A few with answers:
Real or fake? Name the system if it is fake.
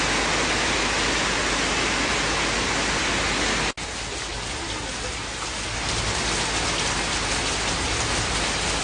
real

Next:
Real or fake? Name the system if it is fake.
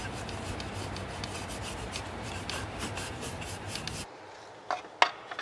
real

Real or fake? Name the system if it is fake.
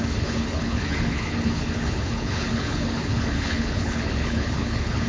fake, codec, HILCodec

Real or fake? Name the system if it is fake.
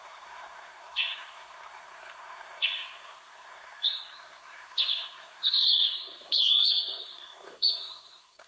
fake, codec, SNAC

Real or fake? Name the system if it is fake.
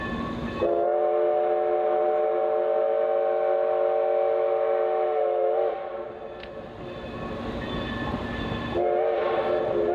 real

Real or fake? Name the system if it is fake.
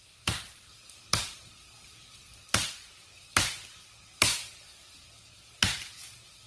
fake, vocoder, BigVGAN v2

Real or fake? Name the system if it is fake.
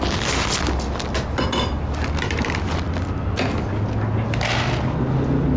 real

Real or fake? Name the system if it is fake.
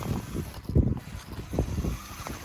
real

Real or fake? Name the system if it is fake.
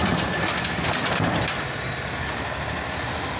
real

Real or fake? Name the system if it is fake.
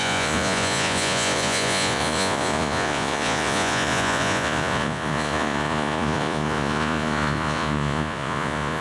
fake, vocoder, Vocos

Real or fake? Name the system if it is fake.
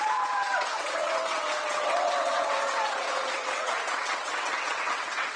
fake, vocoder, WaveNeXt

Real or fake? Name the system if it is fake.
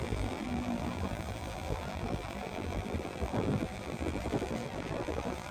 fake, vocoder, BigVGAN v2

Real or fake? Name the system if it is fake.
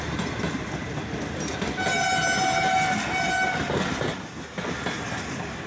real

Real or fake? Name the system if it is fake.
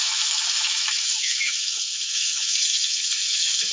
fake, autoencoder, DAC-VAE